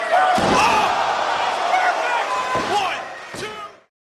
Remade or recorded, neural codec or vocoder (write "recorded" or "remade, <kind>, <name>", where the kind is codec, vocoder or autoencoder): recorded